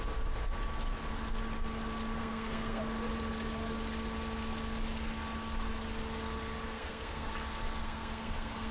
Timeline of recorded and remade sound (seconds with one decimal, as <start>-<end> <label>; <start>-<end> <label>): 0.0-2.2 recorded; 2.2-2.8 remade; 2.8-6.7 recorded; 6.7-7.3 remade; 7.3-7.8 recorded; 7.8-8.7 remade